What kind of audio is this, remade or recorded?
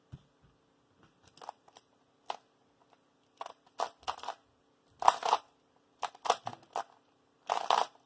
recorded